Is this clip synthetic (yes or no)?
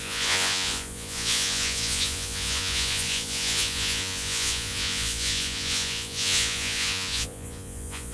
yes